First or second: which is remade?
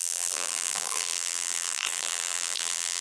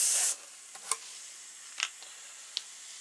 first